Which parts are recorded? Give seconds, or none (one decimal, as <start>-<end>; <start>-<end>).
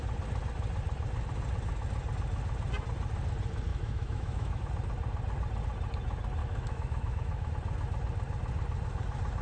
0.0-3.7; 4.7-6.4; 7.5-9.4